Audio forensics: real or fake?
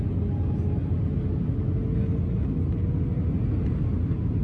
real